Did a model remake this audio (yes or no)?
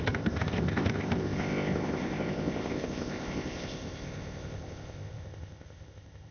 yes